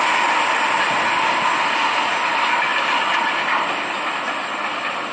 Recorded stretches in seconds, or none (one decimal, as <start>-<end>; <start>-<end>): 0.0-5.1